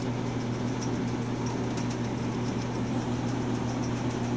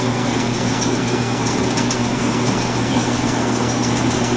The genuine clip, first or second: first